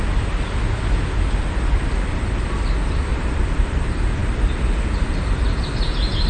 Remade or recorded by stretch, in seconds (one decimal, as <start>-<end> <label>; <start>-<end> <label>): 0.0-3.1 recorded; 3.1-3.8 remade; 3.8-6.3 recorded

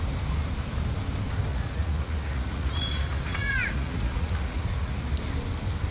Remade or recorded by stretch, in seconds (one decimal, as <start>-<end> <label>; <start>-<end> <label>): 0.0-1.5 recorded; 1.5-5.0 remade; 5.0-5.9 recorded

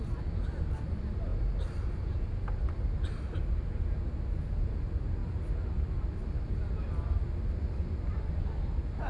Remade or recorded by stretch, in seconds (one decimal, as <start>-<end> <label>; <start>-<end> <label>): 0.0-9.1 recorded

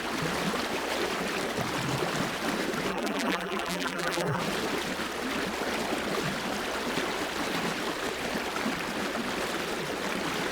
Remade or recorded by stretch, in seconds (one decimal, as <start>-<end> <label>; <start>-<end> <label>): 0.0-2.9 recorded; 2.9-4.4 remade; 4.4-10.5 recorded

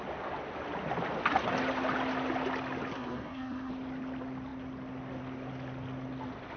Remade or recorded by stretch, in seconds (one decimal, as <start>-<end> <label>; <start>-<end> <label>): 0.0-2.9 recorded; 2.9-3.7 remade; 3.7-6.6 recorded

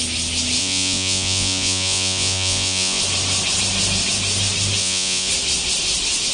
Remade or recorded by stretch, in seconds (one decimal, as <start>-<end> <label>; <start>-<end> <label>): 0.0-0.6 recorded; 0.6-3.0 remade; 3.0-4.8 recorded; 4.8-5.3 remade; 5.3-6.3 recorded